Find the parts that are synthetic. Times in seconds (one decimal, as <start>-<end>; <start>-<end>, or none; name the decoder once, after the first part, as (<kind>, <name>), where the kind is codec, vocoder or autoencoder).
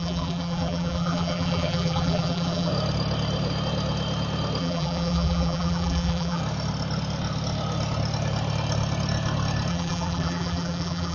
0.0-2.7 (vocoder, BigVGAN v2); 4.6-6.4; 9.7-11.1